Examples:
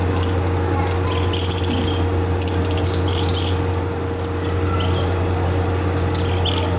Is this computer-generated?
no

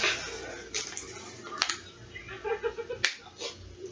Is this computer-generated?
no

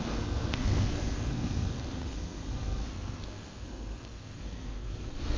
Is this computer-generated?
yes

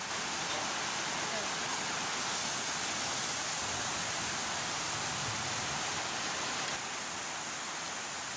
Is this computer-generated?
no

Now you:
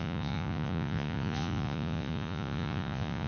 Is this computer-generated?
yes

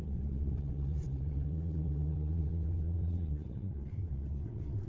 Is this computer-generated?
yes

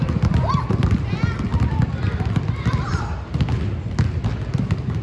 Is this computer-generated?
no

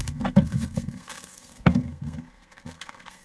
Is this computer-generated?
yes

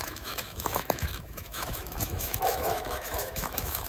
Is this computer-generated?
yes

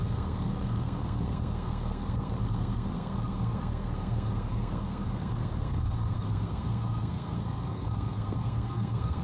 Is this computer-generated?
yes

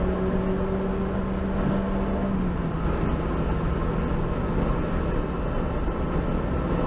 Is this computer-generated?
no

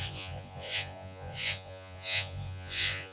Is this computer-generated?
yes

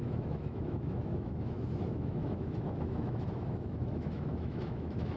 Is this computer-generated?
yes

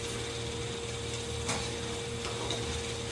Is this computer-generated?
no